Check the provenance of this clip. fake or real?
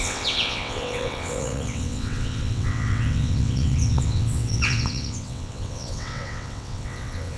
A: fake